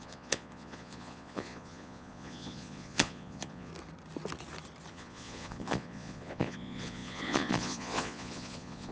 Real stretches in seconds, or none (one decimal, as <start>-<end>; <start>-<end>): 3.7-4.9